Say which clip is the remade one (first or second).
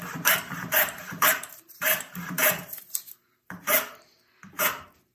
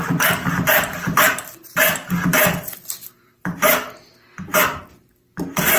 first